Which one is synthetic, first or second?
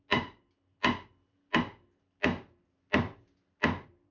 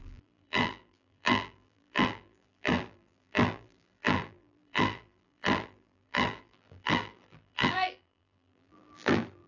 second